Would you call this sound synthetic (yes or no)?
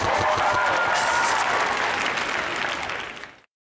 no